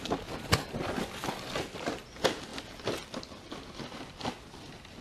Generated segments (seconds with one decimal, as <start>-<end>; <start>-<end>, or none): none

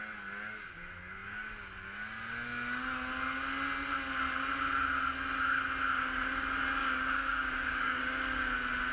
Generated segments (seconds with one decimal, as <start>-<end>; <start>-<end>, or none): 6.8-8.0

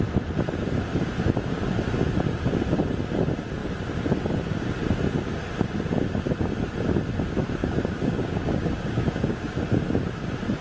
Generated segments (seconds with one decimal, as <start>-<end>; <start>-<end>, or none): 7.6-9.6

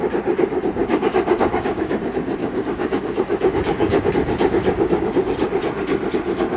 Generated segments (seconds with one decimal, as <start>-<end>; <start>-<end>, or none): 0.8-1.9; 2.4-4.1; 4.6-5.2

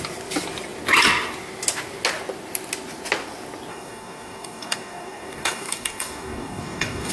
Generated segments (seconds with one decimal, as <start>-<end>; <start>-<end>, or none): 3.7-7.1

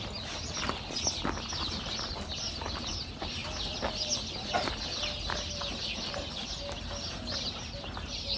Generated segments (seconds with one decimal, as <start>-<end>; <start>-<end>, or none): none

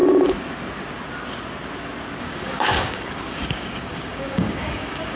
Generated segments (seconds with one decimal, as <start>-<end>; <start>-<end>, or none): 2.2-5.2

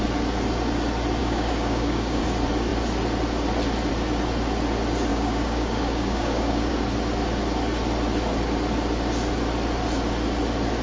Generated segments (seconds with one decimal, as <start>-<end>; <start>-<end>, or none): 1.2-2.2; 5.1-6.7